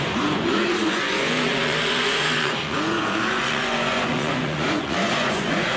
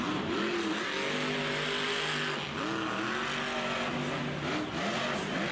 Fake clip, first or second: first